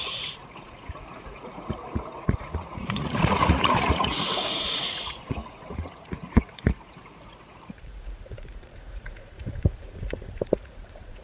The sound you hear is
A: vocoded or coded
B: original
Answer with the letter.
A